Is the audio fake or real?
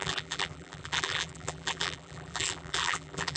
fake